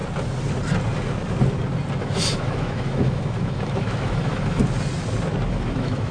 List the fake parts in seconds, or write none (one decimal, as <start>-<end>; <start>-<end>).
2.0-4.6; 5.5-6.1